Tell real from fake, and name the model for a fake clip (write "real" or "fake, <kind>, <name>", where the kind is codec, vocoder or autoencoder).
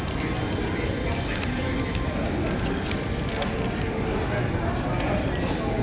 real